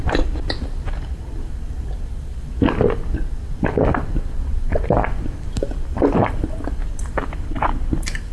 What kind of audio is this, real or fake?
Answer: real